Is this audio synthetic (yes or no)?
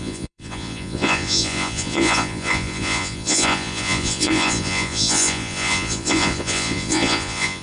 yes